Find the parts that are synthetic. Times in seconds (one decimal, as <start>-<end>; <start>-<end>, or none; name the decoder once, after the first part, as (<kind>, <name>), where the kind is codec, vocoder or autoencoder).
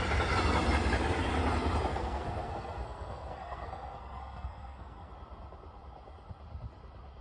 1.9-5.1 (codec, SNAC)